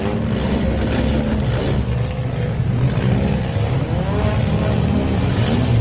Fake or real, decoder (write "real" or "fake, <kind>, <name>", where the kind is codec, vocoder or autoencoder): real